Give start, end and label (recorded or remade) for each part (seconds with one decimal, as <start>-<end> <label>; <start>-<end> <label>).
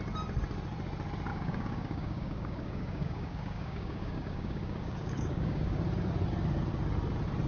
0.0-1.3 recorded; 1.3-5.8 remade; 5.8-7.5 recorded